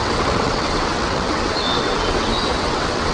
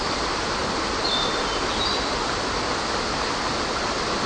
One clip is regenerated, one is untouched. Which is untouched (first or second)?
second